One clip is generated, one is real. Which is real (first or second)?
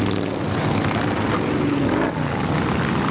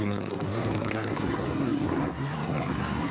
first